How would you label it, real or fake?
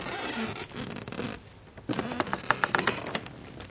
real